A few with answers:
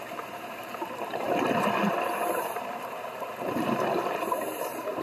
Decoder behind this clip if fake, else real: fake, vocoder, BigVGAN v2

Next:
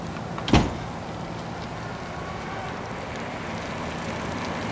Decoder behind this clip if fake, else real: real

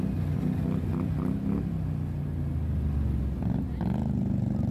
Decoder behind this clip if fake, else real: real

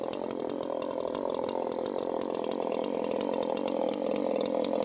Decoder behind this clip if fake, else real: real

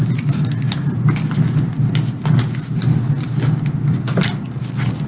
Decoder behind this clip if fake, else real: real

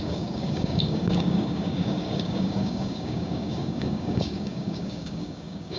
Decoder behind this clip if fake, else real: fake, codec, DAC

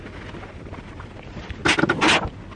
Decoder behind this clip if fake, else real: real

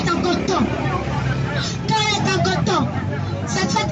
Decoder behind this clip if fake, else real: real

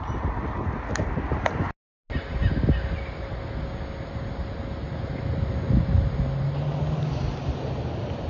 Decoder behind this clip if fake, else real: real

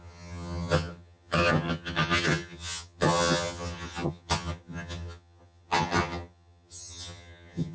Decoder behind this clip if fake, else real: fake, vocoder, HiFi-GAN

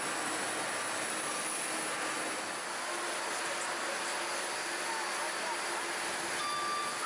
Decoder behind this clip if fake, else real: real